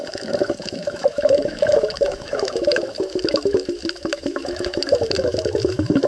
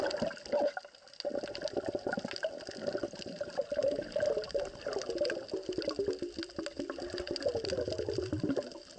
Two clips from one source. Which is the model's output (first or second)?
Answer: first